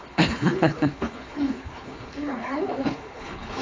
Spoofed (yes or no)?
yes